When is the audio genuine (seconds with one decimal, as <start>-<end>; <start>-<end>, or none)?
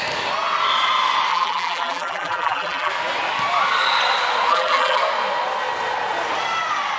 0.0-1.3; 2.9-4.5; 5.0-7.0